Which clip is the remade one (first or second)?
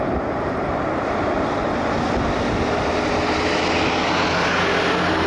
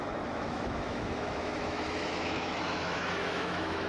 second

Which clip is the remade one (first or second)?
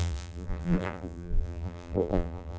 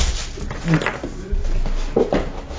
first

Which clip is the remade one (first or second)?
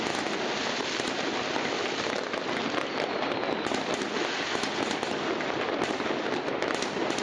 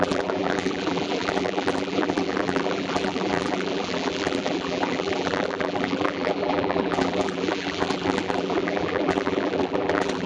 second